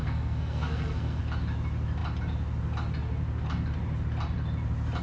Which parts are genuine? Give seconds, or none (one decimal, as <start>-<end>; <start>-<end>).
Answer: 1.2-5.0